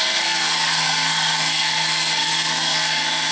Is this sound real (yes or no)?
no